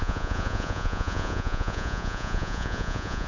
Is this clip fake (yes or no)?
yes